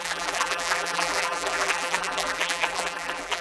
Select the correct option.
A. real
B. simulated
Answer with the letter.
B